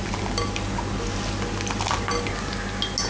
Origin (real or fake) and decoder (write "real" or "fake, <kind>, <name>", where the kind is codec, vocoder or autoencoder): real